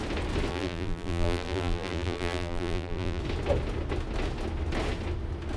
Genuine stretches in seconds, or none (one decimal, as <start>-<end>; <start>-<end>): 0.0-0.5; 3.2-5.6